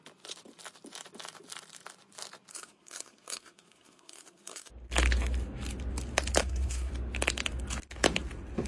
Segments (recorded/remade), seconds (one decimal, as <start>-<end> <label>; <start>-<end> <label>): 0.0-2.5 recorded; 2.5-4.7 remade; 4.7-6.4 recorded; 6.4-6.9 remade; 6.9-8.7 recorded